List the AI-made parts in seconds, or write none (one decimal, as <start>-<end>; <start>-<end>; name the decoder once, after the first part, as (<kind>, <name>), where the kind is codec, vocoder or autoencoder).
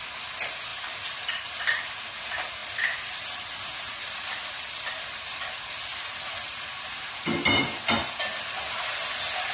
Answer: 0.7-1.9 (vocoder, BigVGAN v2); 2.6-6.7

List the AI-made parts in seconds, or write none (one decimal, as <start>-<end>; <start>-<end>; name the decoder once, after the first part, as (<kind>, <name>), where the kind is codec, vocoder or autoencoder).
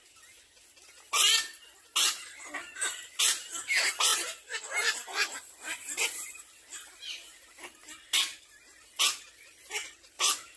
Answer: 2.6-3.2 (vocoder, BigVGAN v2)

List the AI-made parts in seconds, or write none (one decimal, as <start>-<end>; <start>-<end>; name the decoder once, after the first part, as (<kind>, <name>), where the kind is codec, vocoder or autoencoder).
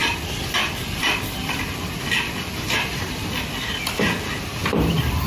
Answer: 0.6-3.8 (vocoder, BigVGAN v2); 4.6-5.3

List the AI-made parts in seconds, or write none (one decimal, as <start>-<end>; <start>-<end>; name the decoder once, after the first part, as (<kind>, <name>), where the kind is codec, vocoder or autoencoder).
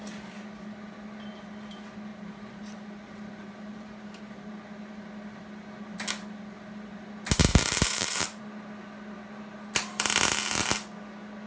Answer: 2.1-4.5 (vocoder, BigVGAN v2); 7.5-8.4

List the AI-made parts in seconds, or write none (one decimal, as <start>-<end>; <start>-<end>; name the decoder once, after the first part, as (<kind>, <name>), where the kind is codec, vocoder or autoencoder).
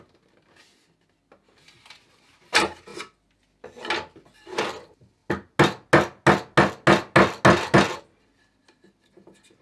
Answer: none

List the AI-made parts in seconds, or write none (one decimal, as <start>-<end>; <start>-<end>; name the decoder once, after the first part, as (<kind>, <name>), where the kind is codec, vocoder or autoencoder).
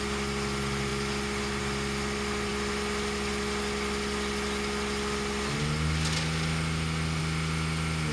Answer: none